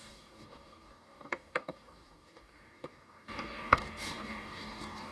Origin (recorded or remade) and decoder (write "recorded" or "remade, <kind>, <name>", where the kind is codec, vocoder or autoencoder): remade, codec, DAC